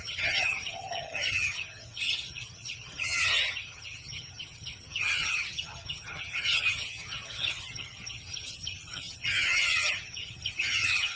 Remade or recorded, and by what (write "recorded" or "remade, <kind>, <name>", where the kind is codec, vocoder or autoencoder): remade, vocoder, HiFi-GAN